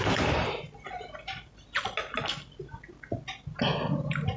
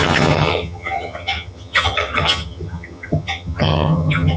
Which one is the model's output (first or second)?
second